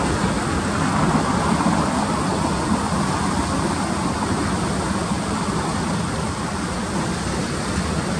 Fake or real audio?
real